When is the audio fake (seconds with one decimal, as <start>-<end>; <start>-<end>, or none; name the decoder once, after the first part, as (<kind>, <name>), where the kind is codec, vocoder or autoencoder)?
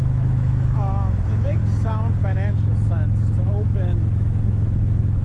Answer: 0.0-1.6 (autoencoder, DAC-VAE); 2.2-5.2